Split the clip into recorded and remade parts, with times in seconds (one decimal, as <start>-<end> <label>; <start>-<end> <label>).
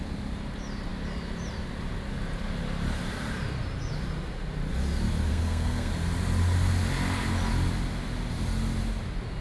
0.0-5.3 recorded; 5.3-5.9 remade; 5.9-9.4 recorded